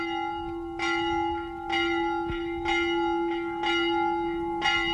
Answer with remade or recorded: recorded